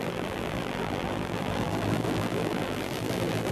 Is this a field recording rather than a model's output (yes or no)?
no